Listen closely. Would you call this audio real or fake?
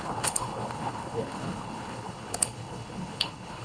fake